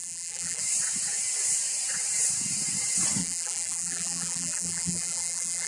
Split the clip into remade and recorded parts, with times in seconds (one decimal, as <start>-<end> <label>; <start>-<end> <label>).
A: 0.0-0.6 remade; 0.6-3.2 recorded; 3.2-5.7 remade